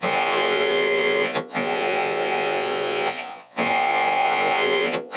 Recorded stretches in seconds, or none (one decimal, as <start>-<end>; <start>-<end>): none